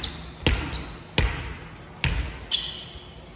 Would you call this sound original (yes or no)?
yes